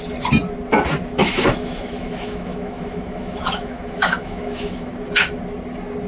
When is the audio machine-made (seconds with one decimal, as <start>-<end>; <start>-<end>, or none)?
1.2-4.9